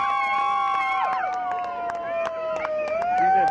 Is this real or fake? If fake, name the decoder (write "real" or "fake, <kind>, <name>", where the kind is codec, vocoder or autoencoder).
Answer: real